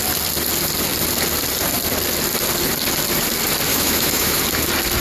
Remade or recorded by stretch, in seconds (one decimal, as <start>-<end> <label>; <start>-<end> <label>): 0.0-3.7 recorded; 3.7-4.4 remade; 4.4-5.0 recorded